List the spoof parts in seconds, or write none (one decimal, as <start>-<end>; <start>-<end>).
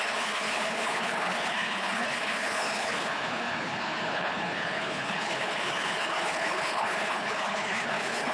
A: 0.0-8.3